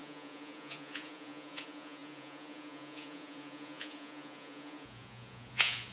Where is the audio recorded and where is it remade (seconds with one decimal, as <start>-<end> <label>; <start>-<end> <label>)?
0.0-5.9 remade